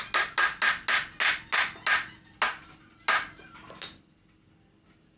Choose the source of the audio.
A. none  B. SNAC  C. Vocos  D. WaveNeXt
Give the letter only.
A